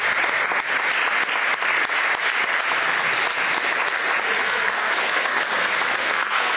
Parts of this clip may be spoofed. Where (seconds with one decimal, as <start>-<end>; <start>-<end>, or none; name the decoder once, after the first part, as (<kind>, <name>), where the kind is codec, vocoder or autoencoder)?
4.4-5.4 (codec, SNAC); 6.0-6.6

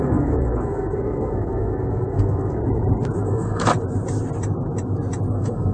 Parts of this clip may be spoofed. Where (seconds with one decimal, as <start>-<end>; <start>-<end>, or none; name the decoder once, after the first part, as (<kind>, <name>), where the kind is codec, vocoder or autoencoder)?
0.0-2.6 (codec, SNAC); 3.2-3.7; 5.3-5.7

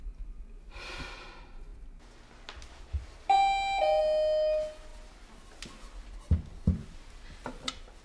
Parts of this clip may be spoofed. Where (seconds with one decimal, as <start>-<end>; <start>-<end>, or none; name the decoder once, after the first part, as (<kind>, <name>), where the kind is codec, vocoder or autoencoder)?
none

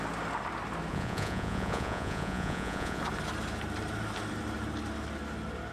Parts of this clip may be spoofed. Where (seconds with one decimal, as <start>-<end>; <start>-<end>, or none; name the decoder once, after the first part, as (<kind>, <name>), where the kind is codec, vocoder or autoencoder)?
0.9-3.0 (vocoder, Vocos)

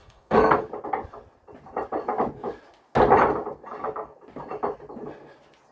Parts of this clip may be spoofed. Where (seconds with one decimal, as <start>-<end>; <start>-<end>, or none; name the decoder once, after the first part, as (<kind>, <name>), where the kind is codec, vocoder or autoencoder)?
0.0-0.6 (codec, SNAC)

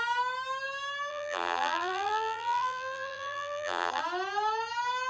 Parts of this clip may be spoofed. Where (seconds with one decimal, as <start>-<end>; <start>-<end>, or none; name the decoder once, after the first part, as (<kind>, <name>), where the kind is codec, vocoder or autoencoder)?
1.1-4.0 (vocoder, BigVGAN v2)